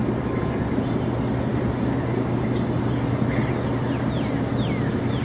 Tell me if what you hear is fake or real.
real